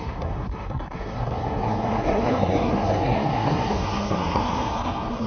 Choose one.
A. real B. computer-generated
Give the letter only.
B